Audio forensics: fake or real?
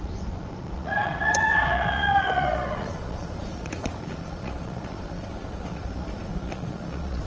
fake